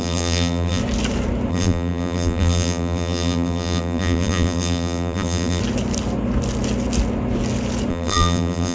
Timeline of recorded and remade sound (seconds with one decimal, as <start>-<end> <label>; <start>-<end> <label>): 0.0-0.8 remade; 0.8-1.5 recorded; 1.5-5.6 remade; 5.6-7.9 recorded; 7.9-8.7 remade